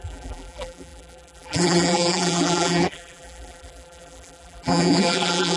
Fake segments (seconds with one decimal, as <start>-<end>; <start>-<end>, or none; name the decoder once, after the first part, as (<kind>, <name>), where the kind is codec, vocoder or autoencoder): 0.0-5.6 (vocoder, BigVGAN v2)